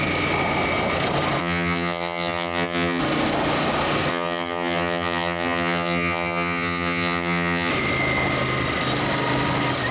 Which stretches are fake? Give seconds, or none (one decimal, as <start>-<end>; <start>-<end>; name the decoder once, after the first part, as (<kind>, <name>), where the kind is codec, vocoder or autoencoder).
1.4-3.0 (vocoder, HiFi-GAN); 4.1-7.7